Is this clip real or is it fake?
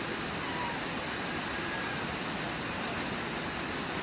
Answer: real